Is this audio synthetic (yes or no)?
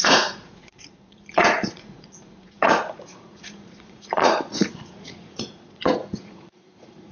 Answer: yes